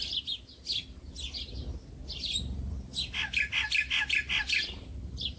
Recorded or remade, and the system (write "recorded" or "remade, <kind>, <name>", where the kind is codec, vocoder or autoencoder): recorded